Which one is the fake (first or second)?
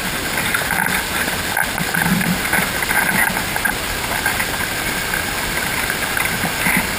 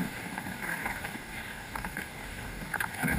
second